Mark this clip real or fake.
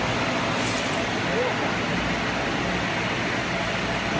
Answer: real